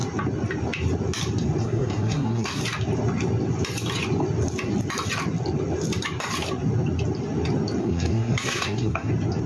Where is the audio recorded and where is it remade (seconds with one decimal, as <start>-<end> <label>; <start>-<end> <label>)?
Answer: 0.0-1.6 recorded; 1.6-2.6 remade; 2.6-7.8 recorded; 7.8-9.1 remade; 9.1-9.5 recorded